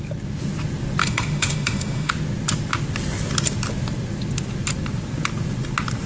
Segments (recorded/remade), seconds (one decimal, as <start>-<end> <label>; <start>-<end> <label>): 0.0-1.0 recorded; 1.0-2.1 remade; 2.1-6.1 recorded